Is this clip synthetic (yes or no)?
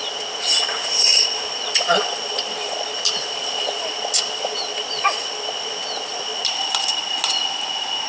no